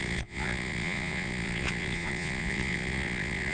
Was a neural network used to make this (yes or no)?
yes